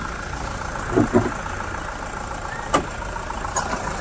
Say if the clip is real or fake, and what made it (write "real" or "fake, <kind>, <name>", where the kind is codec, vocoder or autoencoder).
real